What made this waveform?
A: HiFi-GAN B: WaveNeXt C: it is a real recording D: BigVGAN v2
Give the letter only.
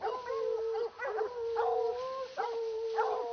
C